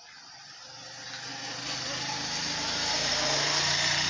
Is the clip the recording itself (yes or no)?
yes